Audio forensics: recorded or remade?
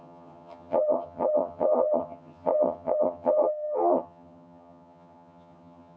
remade